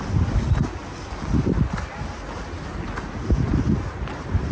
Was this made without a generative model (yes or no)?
yes